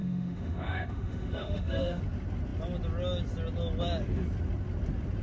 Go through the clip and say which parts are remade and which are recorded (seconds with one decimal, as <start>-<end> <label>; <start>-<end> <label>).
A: 0.0-2.0 remade; 2.0-5.2 recorded